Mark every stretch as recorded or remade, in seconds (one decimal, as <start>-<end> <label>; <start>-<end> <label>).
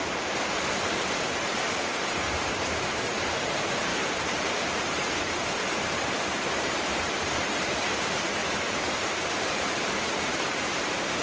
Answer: 0.0-11.2 remade